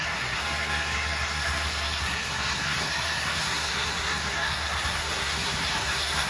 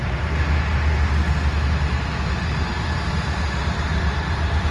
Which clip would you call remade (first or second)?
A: first